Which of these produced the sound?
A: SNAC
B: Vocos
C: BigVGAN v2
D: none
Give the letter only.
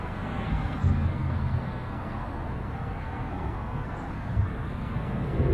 A